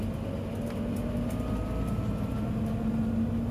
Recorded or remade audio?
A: recorded